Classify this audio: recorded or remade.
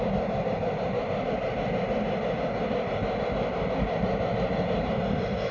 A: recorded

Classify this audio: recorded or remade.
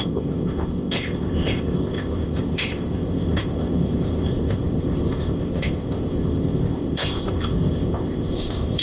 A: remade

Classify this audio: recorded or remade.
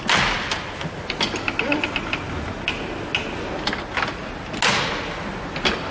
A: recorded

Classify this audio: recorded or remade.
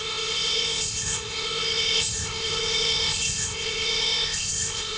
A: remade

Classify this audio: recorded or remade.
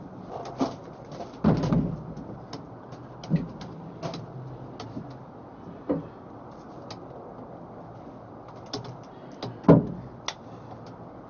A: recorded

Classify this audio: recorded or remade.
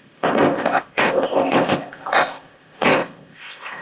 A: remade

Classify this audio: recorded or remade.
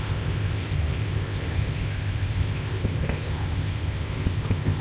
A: remade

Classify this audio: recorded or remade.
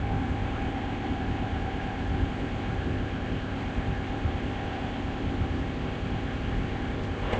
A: remade